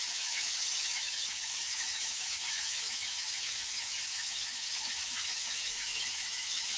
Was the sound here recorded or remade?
remade